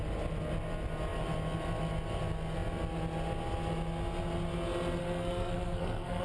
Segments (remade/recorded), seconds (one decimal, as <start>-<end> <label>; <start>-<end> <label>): 0.0-5.0 recorded; 5.0-6.2 remade